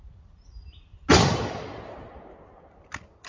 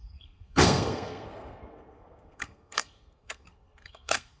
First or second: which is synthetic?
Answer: second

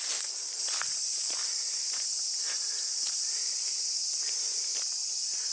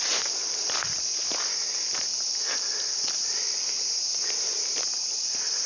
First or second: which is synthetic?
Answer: second